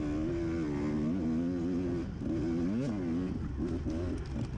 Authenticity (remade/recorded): recorded